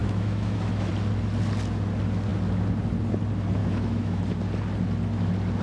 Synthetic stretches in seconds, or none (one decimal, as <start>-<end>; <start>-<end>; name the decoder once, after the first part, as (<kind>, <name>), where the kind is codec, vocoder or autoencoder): 0.0-0.9 (autoencoder, DAC-VAE); 3.6-4.2